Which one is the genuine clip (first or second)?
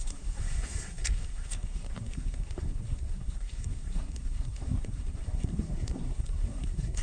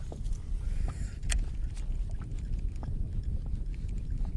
second